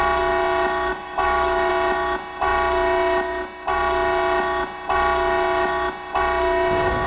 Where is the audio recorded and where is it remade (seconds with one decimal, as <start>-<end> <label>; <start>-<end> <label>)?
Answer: 0.0-0.9 recorded; 0.9-1.7 remade; 1.7-7.1 recorded